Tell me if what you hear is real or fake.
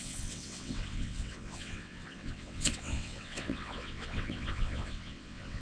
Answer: fake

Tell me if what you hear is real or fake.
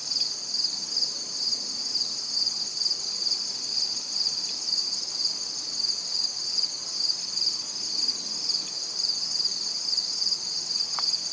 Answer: real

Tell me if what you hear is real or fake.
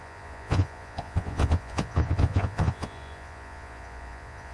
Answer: fake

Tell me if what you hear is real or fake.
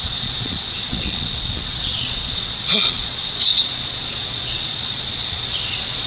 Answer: fake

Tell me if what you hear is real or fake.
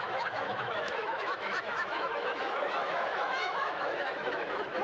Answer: fake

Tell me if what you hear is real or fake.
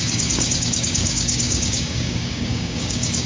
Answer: fake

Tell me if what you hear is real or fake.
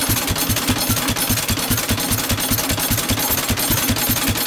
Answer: real